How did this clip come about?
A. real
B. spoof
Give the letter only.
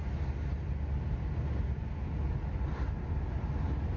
A